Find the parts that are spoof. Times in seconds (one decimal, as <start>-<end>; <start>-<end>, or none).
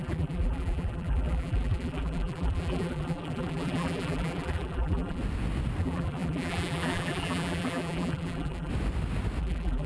0.0-5.2; 5.8-8.7; 9.4-9.9